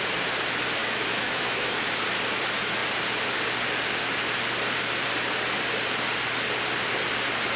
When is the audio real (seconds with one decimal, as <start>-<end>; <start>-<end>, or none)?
0.0-0.8; 1.8-7.6